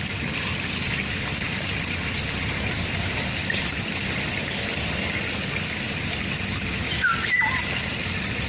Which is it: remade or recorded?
recorded